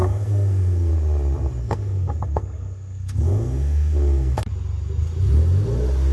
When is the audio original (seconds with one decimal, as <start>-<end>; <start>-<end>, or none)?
0.9-1.6; 4.5-6.1

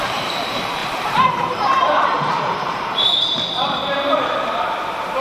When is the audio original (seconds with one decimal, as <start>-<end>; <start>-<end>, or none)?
none